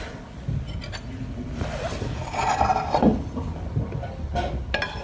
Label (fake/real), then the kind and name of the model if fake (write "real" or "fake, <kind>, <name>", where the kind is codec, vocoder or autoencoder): real